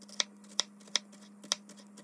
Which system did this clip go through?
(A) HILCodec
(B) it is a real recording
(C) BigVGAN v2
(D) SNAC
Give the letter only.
B